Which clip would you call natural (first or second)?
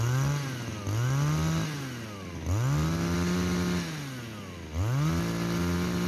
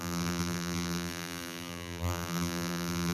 first